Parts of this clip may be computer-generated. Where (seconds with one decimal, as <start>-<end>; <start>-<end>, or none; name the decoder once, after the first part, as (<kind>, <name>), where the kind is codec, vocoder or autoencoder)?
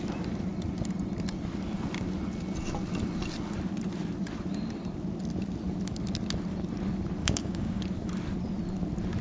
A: 7.2-7.8 (codec, DAC)